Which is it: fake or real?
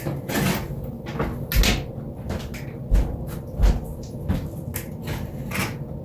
real